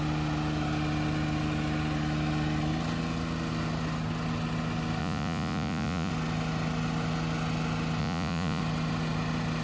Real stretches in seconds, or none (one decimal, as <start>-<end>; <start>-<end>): 0.0-5.0; 6.1-8.0; 8.6-9.6